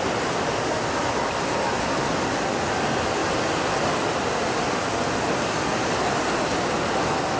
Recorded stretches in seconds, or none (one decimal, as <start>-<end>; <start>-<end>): 0.0-7.4